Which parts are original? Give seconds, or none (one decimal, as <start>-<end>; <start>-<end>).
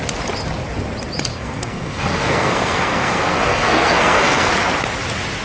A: 0.0-1.3; 4.5-5.4